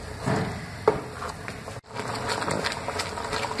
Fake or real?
real